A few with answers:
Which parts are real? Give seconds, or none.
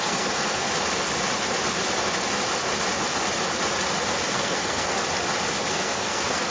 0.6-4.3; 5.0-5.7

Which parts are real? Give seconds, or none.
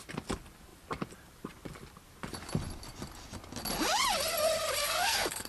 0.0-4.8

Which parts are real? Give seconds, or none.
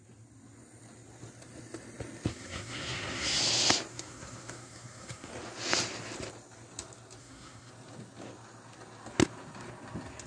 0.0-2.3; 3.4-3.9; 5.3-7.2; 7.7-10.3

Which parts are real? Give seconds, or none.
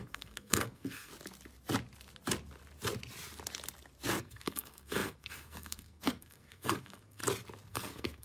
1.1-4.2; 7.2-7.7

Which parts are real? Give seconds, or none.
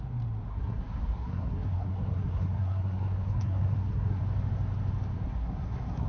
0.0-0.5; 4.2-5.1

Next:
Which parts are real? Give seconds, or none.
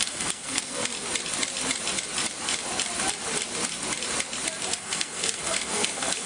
0.9-4.6